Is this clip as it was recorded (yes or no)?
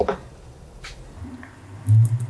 yes